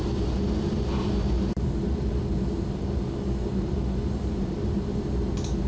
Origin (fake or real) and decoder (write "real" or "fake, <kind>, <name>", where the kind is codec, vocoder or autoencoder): real